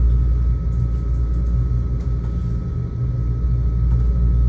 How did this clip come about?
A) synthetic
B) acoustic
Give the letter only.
B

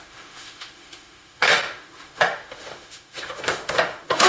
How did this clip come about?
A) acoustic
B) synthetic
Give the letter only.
B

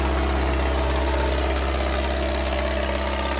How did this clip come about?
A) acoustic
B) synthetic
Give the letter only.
A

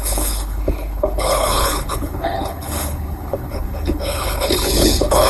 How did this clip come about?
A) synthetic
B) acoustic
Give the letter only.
A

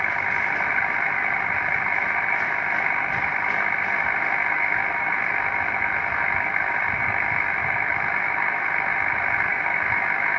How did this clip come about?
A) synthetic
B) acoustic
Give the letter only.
B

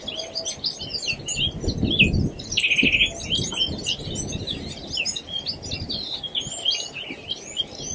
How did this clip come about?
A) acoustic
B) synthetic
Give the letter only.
A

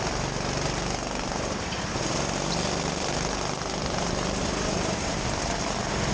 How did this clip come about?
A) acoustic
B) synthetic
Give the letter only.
A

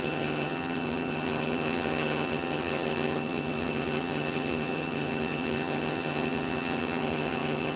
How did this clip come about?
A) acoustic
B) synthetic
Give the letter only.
B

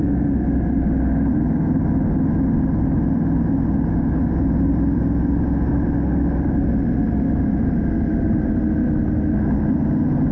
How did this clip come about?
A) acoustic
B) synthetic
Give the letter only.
A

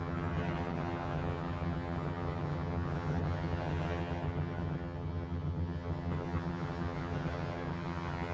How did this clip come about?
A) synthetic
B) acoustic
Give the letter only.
A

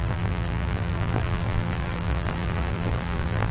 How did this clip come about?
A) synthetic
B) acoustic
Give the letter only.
A